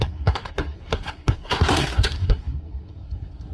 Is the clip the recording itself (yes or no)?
no